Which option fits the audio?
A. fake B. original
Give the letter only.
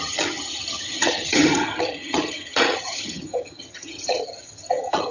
A